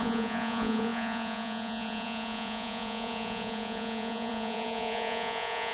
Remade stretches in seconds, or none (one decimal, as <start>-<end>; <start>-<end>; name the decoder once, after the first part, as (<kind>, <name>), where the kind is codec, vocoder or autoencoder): 0.0-5.7 (vocoder, Vocos)